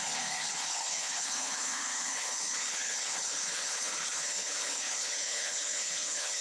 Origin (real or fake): fake